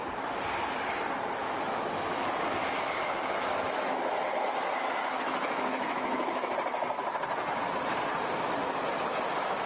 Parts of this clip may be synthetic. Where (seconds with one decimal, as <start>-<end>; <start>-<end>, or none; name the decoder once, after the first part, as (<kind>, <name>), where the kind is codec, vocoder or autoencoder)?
1.4-6.5 (autoencoder, DAC-VAE)